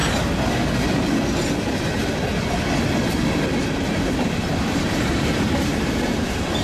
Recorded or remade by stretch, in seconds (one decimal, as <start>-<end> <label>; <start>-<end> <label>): 0.0-4.0 recorded; 4.0-6.6 remade